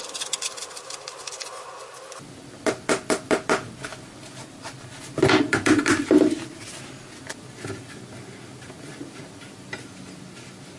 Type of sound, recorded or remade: recorded